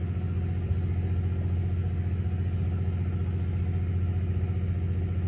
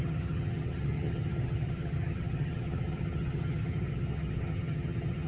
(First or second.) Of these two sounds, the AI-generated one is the second